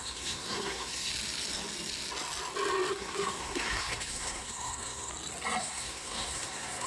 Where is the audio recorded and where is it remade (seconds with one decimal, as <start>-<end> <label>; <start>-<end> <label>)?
0.0-1.1 remade; 1.1-2.9 recorded; 2.9-5.1 remade; 5.1-5.6 recorded; 5.6-6.9 remade